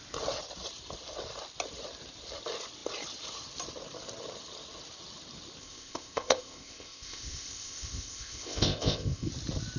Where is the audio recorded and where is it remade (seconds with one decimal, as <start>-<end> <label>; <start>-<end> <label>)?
0.0-5.6 recorded; 5.6-9.3 remade; 9.3-9.8 recorded